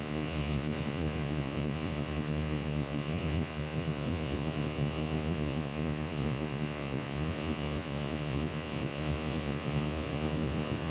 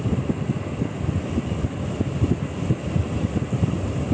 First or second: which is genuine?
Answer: second